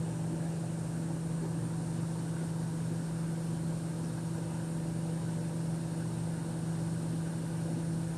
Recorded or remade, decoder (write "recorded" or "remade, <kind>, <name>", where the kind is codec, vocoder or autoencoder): recorded